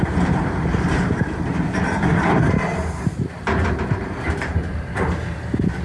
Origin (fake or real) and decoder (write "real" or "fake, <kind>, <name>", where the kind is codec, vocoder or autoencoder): fake, vocoder, BigVGAN v2